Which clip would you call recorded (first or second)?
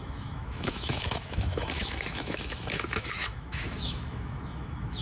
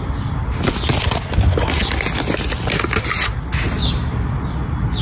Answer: second